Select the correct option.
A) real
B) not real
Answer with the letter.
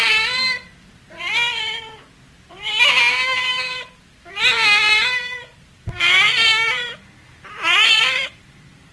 B